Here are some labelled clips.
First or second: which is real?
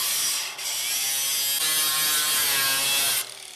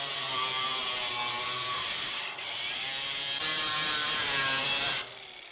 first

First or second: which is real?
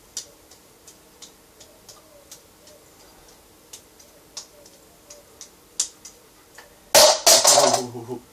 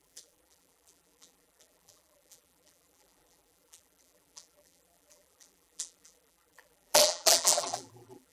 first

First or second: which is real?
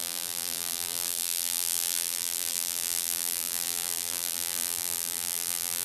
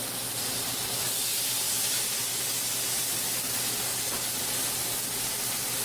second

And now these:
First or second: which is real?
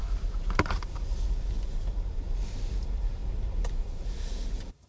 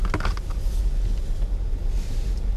second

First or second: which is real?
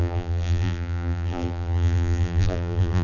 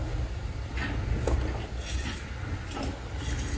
second